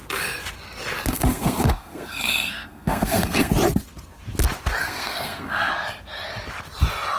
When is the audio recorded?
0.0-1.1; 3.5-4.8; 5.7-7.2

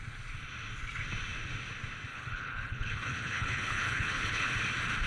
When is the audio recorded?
0.0-2.1; 4.5-5.1